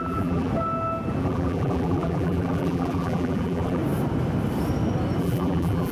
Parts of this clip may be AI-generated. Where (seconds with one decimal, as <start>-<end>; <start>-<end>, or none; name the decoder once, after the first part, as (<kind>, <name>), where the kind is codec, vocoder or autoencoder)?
0.0-0.5 (vocoder, BigVGAN v2); 1.2-3.8; 5.2-5.9